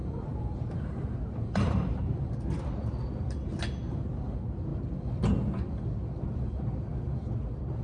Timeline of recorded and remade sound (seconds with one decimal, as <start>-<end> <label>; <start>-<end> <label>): 0.0-2.6 remade; 2.6-7.8 recorded